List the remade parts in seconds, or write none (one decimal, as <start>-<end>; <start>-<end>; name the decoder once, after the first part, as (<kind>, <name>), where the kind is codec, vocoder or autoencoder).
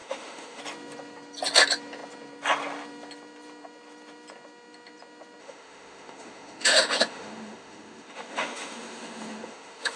0.0-0.6 (autoencoder, DAC-VAE); 5.4-10.0